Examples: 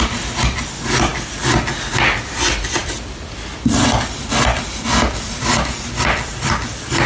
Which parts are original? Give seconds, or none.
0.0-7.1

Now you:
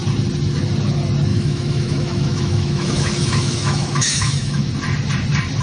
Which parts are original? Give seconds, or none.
0.0-1.3; 4.7-5.6

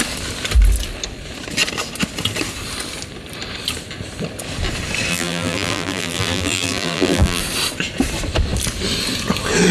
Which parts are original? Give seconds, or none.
0.0-5.1; 7.4-9.7

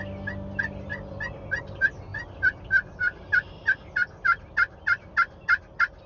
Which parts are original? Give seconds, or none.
0.0-6.1

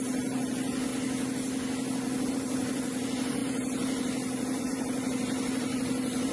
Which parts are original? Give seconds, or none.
0.9-2.3

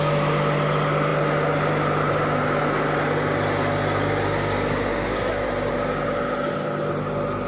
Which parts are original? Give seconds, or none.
0.0-4.4; 5.3-7.5

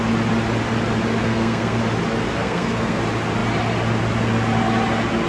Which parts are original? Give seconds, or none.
0.0-1.2; 1.8-2.4; 3.0-5.3

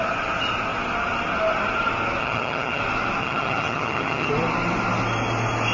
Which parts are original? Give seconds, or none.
0.0-2.2; 2.8-3.2; 4.3-5.7